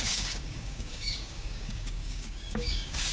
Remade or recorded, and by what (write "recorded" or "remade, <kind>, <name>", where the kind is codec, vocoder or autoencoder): remade, codec, DAC